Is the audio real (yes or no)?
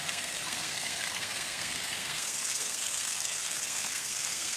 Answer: no